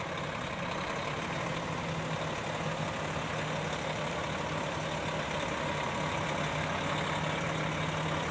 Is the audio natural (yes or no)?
yes